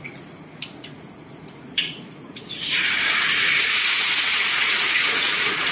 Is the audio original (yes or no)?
no